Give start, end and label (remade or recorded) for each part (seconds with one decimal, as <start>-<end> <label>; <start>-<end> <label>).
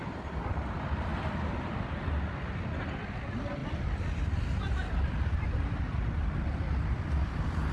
0.0-7.7 recorded